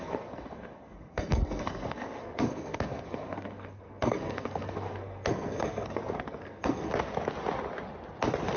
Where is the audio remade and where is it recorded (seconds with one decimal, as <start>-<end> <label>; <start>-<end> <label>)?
0.0-6.9 remade; 6.9-8.6 recorded